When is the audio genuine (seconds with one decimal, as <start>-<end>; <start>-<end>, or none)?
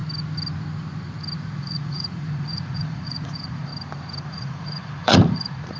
0.0-1.4; 3.7-4.3